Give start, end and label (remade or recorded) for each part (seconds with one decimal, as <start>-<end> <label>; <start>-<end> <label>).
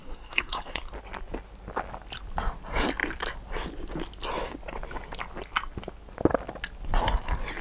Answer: 0.0-0.8 remade; 0.8-7.6 recorded